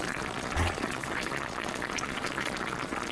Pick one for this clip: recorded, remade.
remade